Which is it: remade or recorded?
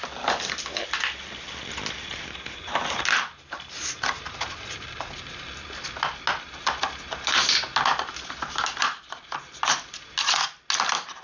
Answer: recorded